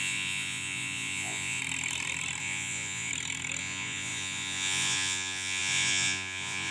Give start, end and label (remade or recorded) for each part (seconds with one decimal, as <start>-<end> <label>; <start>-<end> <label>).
0.0-1.6 remade; 1.6-2.4 recorded; 2.4-3.1 remade; 3.1-3.6 recorded; 3.6-6.7 remade